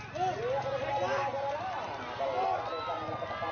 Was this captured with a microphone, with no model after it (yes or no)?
yes